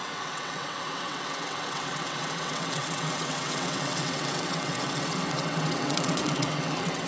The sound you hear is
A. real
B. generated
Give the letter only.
B